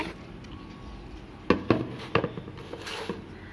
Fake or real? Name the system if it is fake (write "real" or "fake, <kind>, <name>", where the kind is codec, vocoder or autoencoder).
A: real